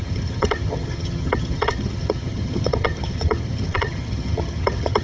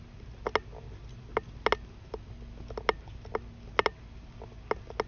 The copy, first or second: first